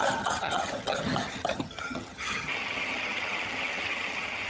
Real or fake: fake